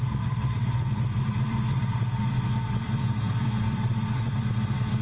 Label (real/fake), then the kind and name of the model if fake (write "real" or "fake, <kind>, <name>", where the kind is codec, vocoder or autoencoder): fake, vocoder, BigVGAN v2